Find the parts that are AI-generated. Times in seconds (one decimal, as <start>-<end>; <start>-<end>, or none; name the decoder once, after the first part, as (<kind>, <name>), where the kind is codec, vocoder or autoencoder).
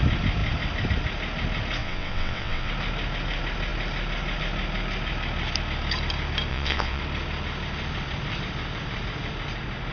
1.8-2.7 (vocoder, WaveNeXt); 6.5-7.0